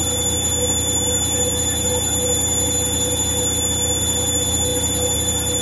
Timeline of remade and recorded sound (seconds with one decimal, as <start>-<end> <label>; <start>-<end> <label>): 0.0-5.6 recorded